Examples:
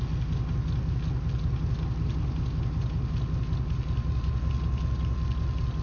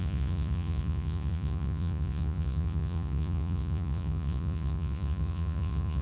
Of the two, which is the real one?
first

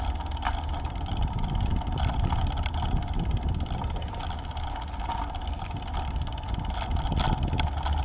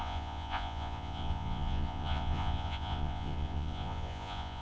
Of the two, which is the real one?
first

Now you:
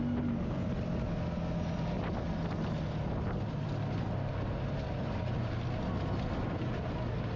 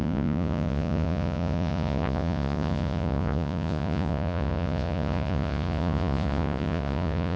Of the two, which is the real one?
first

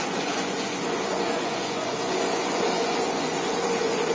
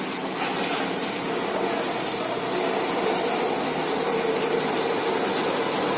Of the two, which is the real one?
second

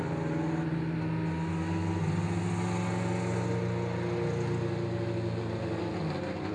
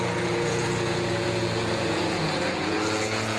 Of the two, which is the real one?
first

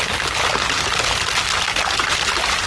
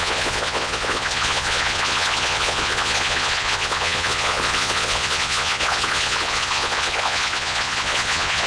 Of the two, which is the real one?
first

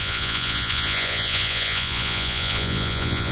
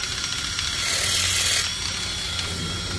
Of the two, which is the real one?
second